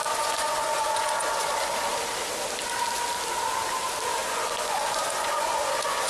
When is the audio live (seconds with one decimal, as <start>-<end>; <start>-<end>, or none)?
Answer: 1.5-4.2